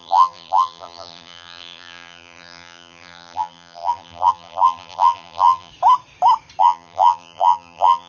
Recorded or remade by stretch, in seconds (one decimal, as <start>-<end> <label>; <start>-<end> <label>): 0.0-5.7 remade; 5.7-6.6 recorded; 6.6-8.1 remade